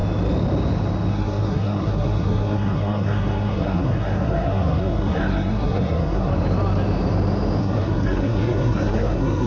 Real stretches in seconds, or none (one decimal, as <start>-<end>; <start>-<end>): 0.0-1.1; 6.3-7.6